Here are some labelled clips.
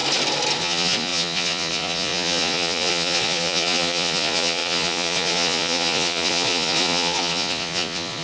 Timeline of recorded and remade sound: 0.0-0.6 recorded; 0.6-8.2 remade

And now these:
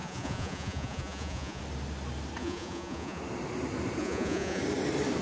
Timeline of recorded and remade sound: 0.0-1.6 remade; 1.6-2.4 recorded; 2.4-3.2 remade; 3.2-4.0 recorded; 4.0-4.6 remade; 4.6-5.2 recorded

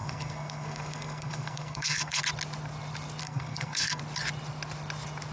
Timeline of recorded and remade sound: 0.0-2.2 remade; 2.2-3.2 recorded; 3.2-4.0 remade; 4.0-5.3 recorded

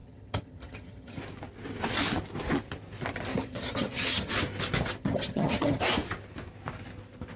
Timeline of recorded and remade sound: 0.0-1.2 remade; 1.2-3.3 recorded; 3.3-4.3 remade; 4.3-5.0 recorded; 5.0-5.8 remade; 5.8-7.4 recorded

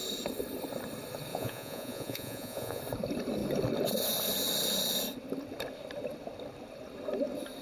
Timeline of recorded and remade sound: 0.0-1.3 recorded; 1.3-2.8 remade; 2.8-7.6 recorded

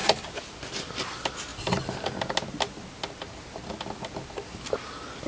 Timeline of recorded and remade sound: 0.0-5.3 recorded